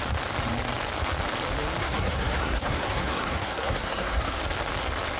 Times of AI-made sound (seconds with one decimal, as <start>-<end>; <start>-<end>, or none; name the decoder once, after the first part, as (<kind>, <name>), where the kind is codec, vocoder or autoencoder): 1.8-4.4 (codec, SNAC)